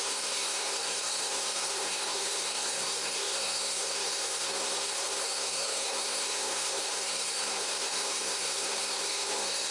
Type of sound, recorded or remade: remade